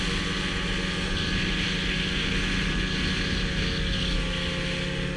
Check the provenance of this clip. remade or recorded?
recorded